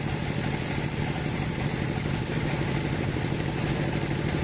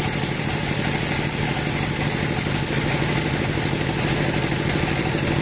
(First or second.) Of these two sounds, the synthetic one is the first